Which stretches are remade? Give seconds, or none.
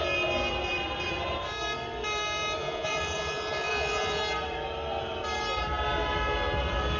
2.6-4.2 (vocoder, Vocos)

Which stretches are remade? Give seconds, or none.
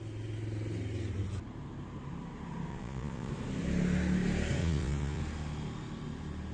2.7-3.3 (vocoder, Vocos); 4.6-5.2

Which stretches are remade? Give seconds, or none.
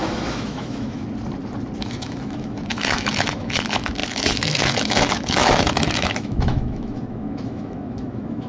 0.0-1.0 (autoencoder, DAC-VAE); 1.8-8.5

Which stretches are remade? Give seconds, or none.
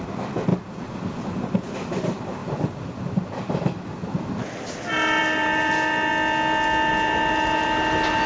0.0-0.5 (vocoder, BigVGAN v2); 1.2-2.4; 5.2-6.1; 6.9-8.3